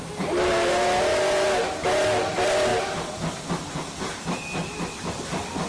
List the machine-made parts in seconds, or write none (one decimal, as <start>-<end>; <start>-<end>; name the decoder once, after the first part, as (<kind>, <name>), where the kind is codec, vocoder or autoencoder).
none